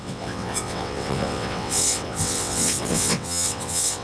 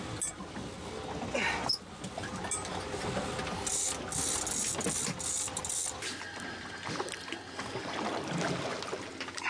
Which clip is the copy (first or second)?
first